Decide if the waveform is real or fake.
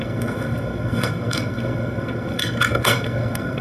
fake